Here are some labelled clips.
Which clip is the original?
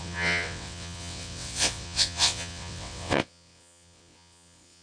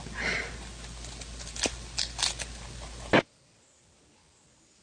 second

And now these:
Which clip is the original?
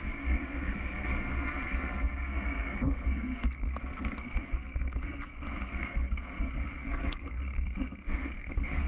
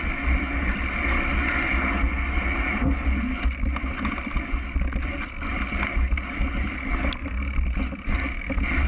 second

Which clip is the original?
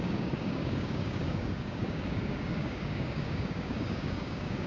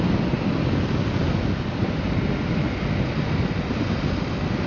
second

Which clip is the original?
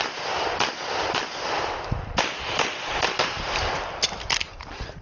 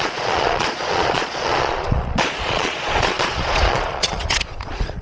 first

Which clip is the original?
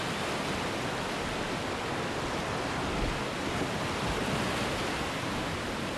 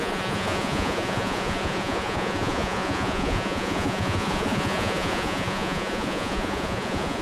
first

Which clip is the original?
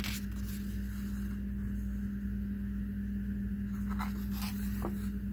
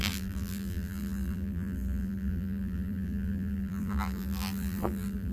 first